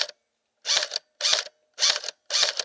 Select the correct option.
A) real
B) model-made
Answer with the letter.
A